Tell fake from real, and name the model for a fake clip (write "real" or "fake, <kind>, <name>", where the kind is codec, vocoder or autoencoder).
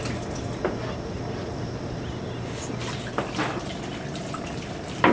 real